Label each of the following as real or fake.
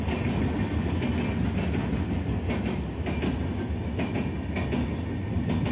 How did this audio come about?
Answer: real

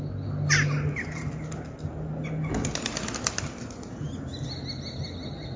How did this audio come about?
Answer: real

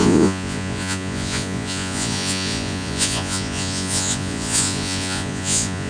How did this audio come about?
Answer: fake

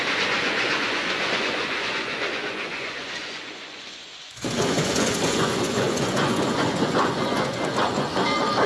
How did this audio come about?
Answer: fake